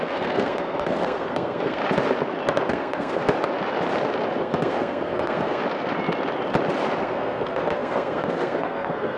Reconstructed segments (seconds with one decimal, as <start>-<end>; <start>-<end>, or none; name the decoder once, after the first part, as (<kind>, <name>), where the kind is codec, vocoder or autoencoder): 0.0-1.8 (codec, SNAC); 2.7-3.2; 4.4-5.6; 7.0-9.2